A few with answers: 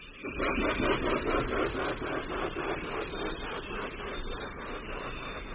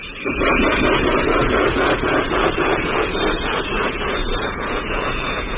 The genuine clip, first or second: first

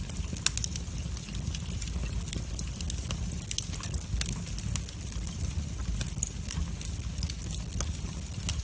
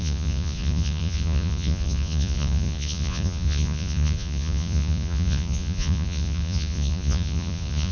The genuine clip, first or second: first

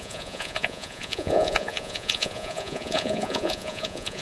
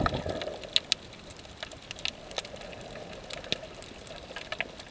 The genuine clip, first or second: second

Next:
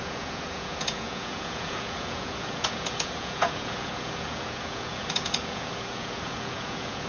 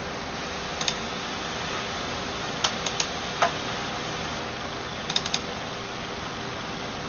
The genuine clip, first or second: second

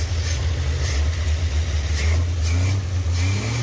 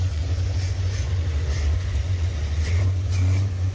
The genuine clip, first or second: first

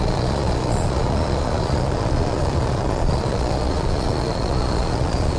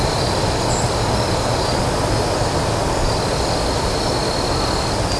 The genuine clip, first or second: second